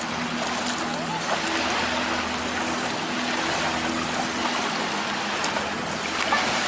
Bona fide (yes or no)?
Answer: yes